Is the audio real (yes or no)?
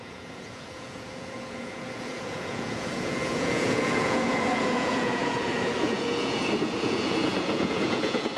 no